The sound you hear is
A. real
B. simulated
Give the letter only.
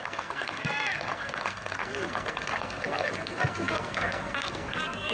B